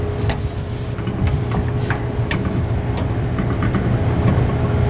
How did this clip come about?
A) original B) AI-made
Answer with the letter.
A